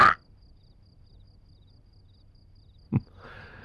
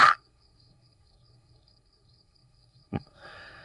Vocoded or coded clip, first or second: second